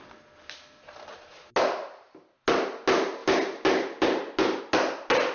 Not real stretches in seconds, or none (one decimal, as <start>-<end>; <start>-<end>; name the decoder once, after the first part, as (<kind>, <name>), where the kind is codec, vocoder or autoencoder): none